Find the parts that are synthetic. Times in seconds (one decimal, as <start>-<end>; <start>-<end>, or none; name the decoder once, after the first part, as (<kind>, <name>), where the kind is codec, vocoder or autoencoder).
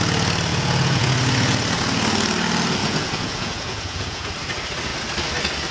0.5-1.1 (vocoder, Vocos); 2.8-4.3